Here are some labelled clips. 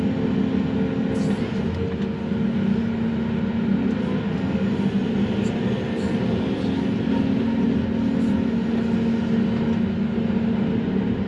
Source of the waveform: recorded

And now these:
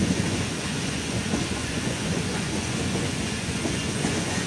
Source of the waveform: remade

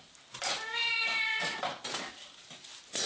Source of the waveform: recorded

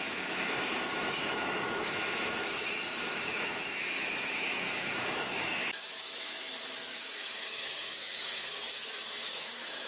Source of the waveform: remade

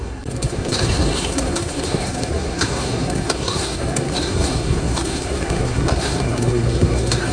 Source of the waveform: remade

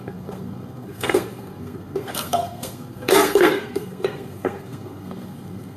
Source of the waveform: remade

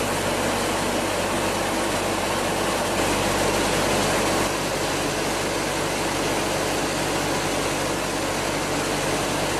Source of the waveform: recorded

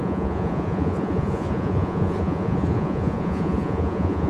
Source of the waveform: remade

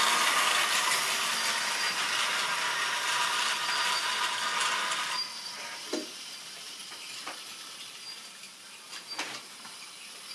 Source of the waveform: recorded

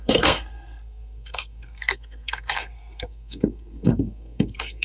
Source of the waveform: remade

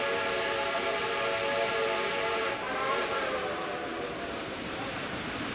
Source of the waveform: remade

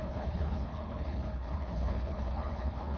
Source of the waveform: remade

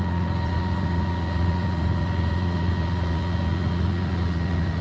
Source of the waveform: remade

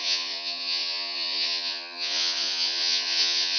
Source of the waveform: remade